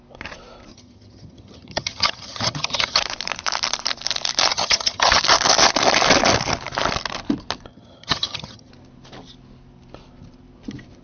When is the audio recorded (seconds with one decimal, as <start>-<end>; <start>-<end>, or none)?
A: 0.0-0.7; 3.0-4.5; 5.2-7.7; 8.7-11.0